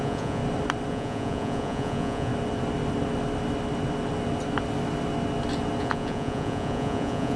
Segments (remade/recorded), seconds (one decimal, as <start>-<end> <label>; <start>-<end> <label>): 0.0-0.4 remade; 0.4-0.9 recorded; 0.9-2.3 remade; 2.3-5.8 recorded; 5.8-7.4 remade

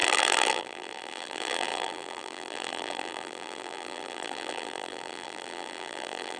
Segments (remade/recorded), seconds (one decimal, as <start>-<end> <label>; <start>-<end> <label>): 0.0-6.4 remade

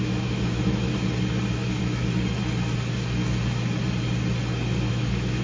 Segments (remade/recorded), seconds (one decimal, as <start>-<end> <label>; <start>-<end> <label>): 0.0-0.9 remade; 0.9-1.5 recorded; 1.5-2.0 remade; 2.0-4.9 recorded; 4.9-5.4 remade

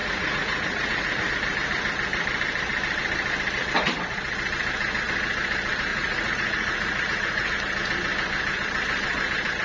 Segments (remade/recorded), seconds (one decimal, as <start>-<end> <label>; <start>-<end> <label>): 0.0-1.3 remade; 1.3-5.9 recorded; 5.9-7.5 remade; 7.5-9.6 recorded

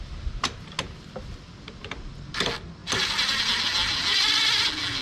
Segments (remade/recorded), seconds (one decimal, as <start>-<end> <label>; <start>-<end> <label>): 0.0-5.0 recorded

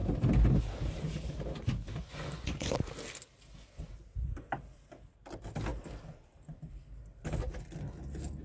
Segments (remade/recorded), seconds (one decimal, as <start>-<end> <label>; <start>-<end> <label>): 0.0-2.0 recorded; 2.0-2.7 remade; 2.7-8.4 recorded

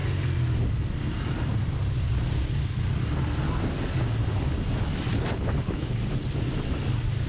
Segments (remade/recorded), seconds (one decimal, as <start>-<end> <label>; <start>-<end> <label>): 0.0-5.1 recorded; 5.1-6.1 remade; 6.1-7.3 recorded

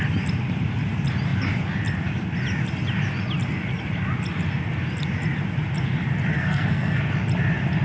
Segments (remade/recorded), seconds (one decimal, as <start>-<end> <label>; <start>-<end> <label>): 0.0-6.3 recorded; 6.3-7.0 remade; 7.0-7.8 recorded